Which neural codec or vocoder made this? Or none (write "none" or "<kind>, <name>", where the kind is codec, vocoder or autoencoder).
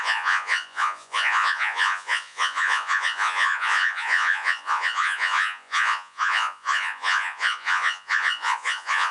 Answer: vocoder, Vocos